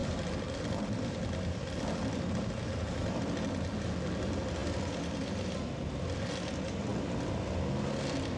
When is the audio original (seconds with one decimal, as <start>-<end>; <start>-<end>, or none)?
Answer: 3.8-4.6; 5.6-8.4